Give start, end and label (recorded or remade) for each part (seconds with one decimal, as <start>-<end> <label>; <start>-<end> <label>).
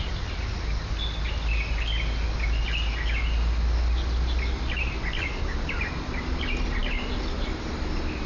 0.0-8.3 recorded